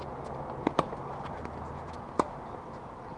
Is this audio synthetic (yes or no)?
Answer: no